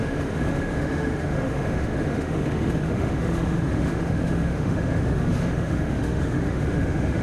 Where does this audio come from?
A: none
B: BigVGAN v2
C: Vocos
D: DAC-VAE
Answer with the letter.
D